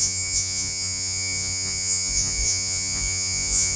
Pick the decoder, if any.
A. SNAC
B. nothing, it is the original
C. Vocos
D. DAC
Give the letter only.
C